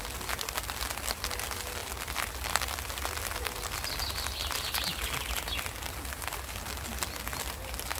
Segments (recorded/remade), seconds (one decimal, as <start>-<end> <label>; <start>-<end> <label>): 0.0-8.0 recorded